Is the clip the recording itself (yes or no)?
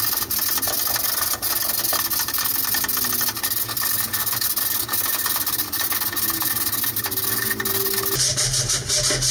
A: yes